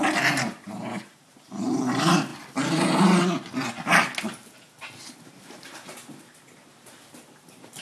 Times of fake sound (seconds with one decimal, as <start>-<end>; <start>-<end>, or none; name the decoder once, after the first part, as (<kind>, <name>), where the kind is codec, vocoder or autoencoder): 0.0-2.3 (vocoder, BigVGAN v2); 5.0-7.8